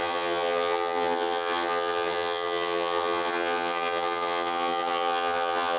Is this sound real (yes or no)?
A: no